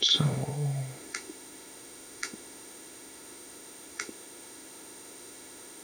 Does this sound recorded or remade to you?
remade